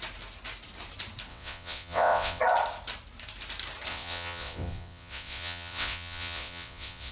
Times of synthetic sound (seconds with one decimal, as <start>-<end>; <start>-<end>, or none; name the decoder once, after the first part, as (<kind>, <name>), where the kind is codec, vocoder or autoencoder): 1.3-2.4 (vocoder, WaveNeXt); 3.9-7.1